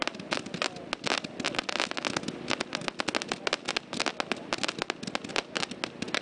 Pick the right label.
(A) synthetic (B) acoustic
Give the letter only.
B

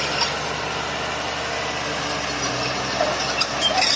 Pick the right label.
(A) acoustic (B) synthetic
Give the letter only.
A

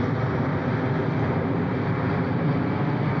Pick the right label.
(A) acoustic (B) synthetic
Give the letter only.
A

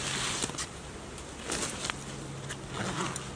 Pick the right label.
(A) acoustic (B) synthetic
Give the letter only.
A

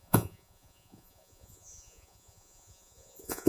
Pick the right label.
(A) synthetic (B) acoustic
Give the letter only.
A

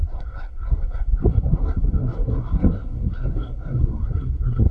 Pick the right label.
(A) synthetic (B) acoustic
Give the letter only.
A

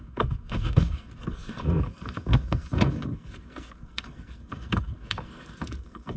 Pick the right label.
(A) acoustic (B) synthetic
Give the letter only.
B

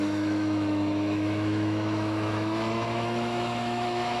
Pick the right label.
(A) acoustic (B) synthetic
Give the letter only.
B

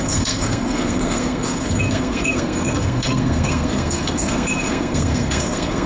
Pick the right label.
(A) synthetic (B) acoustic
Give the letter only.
A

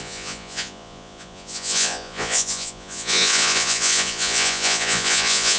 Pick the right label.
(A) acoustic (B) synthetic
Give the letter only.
B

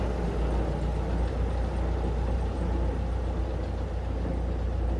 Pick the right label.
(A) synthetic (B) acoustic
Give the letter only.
B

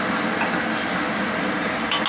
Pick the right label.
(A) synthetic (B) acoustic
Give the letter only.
B